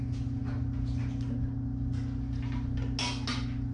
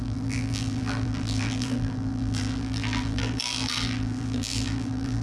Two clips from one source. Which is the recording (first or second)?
first